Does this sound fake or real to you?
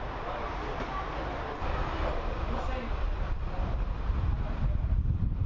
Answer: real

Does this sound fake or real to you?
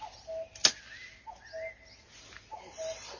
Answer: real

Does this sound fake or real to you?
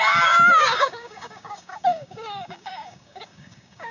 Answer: fake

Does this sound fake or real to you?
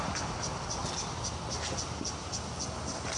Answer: real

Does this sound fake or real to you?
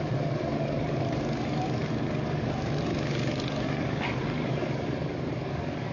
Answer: fake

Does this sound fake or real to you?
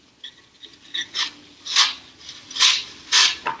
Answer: real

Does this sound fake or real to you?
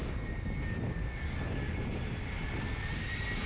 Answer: real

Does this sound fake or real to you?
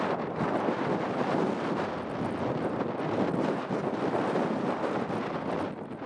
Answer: real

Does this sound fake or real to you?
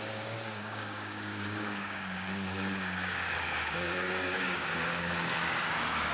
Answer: fake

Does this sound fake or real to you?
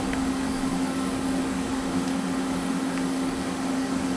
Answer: fake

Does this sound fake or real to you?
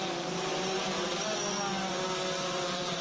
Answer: real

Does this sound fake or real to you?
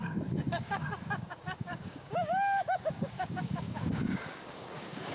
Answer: fake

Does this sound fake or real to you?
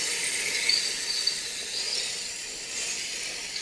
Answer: real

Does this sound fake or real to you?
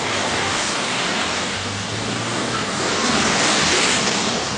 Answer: fake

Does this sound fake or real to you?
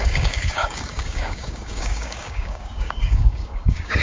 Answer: fake